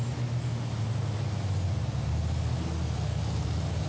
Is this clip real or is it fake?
real